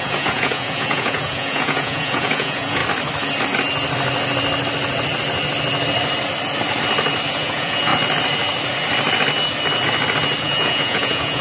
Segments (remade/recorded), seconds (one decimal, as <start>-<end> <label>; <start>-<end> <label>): 0.0-2.8 remade; 2.8-7.3 recorded; 7.3-7.9 remade; 7.9-10.4 recorded; 10.4-11.4 remade